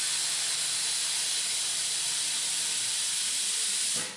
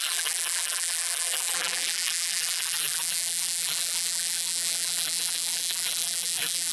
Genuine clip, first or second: first